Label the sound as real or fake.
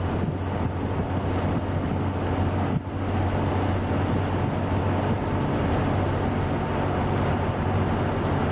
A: real